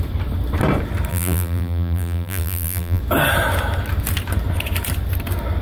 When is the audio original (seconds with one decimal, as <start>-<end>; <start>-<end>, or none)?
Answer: 0.0-1.1; 3.0-5.6